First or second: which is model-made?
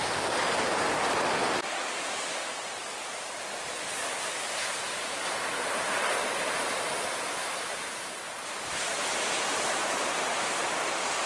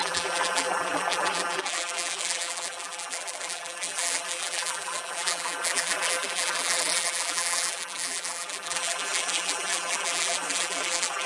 second